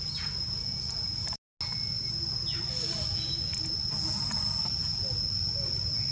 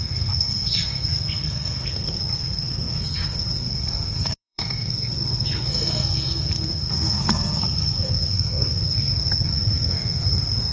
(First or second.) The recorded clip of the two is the first